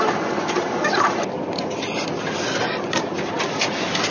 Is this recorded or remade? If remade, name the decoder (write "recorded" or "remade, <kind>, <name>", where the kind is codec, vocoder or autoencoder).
recorded